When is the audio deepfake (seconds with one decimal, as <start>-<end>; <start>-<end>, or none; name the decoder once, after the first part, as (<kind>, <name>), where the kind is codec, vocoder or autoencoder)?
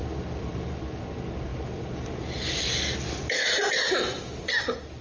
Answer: 0.0-1.0 (vocoder, BigVGAN v2); 1.5-4.5